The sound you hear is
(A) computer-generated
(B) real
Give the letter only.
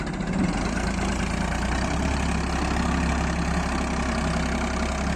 B